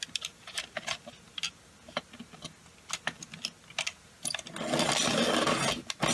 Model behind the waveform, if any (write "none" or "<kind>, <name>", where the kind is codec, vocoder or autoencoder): none